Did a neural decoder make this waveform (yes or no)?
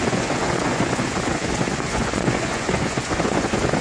yes